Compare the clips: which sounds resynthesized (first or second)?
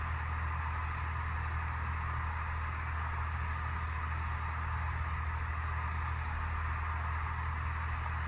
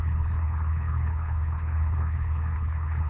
second